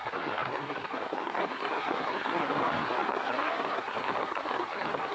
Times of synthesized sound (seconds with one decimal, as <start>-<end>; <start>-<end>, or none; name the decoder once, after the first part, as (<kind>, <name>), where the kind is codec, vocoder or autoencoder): 0.0-5.1 (codec, SNAC)